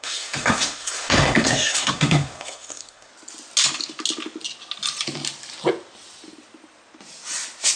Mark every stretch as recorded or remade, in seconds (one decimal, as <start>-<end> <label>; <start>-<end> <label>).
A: 0.0-3.1 remade; 3.1-7.8 recorded